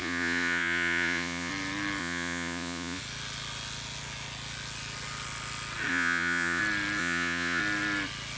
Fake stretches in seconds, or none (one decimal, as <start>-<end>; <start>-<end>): 0.0-1.5; 2.0-3.0; 5.9-6.6; 7.0-7.6